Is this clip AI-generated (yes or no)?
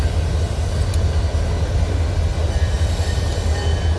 no